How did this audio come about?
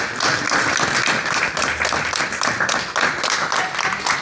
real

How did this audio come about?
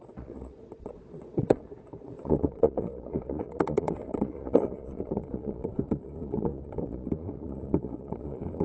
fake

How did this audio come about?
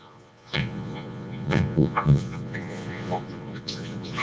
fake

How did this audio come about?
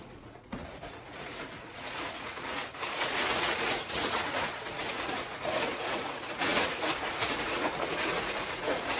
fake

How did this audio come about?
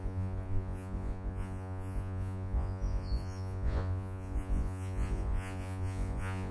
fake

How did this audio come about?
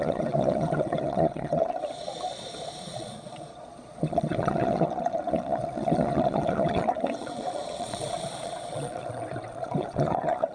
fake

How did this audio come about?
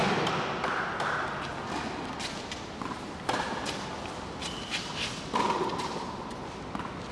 real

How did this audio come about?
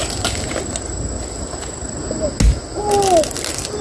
real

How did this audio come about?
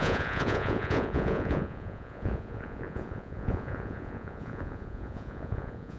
fake